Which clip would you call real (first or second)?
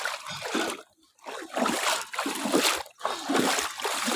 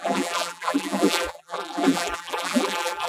first